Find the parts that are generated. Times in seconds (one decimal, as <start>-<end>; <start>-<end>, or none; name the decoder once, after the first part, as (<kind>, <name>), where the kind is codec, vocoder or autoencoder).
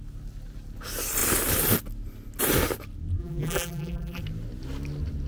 3.2-4.2 (vocoder, BigVGAN v2)